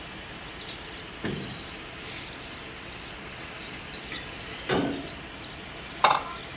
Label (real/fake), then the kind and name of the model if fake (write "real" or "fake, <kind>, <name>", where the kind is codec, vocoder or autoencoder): real